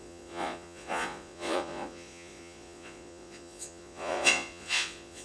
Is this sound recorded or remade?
remade